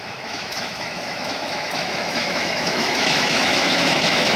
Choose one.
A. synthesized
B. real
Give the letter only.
A